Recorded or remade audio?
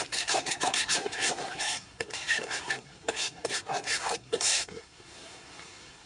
remade